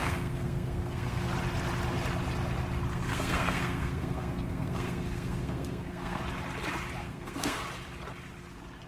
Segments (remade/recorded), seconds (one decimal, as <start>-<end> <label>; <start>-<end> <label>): 0.0-1.3 remade; 1.3-2.9 recorded; 2.9-6.2 remade; 6.2-7.0 recorded; 7.0-7.6 remade; 7.6-8.9 recorded